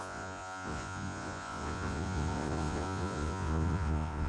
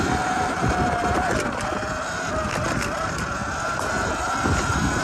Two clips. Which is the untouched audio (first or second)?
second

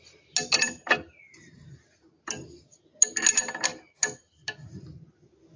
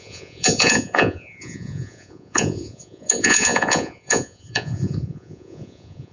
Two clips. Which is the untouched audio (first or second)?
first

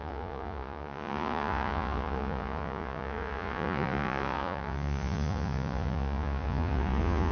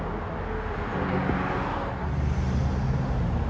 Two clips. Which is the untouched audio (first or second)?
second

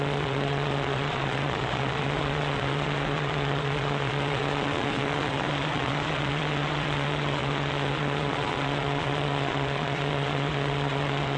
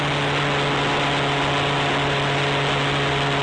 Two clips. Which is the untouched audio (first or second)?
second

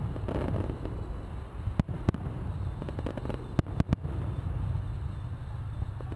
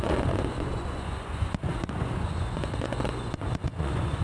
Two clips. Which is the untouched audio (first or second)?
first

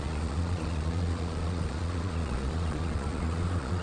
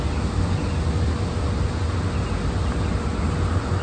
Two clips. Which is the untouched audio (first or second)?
second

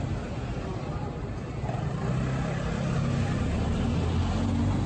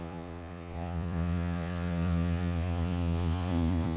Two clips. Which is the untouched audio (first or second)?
first